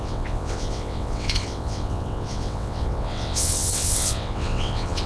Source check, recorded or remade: remade